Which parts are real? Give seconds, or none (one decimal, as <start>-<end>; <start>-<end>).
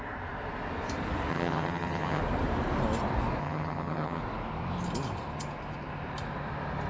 0.0-1.3; 2.2-3.4; 4.2-6.9